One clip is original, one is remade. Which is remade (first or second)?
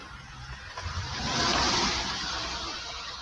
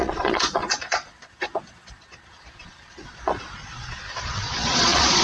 second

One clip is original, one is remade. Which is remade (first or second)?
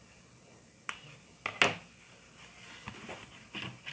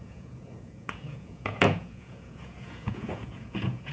second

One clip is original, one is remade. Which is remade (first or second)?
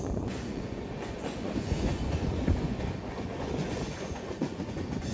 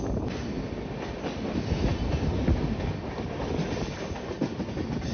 first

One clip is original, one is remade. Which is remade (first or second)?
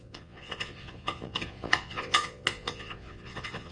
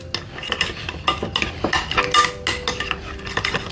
first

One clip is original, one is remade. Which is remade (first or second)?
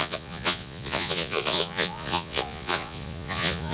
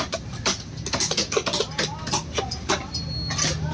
first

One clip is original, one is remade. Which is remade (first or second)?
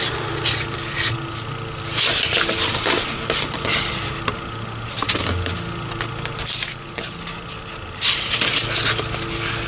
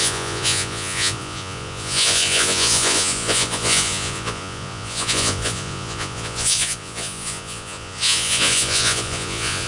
second